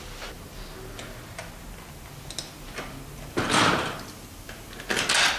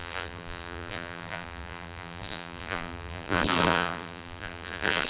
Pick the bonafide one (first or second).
first